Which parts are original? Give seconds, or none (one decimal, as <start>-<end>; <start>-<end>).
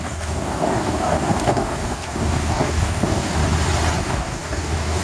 3.4-4.0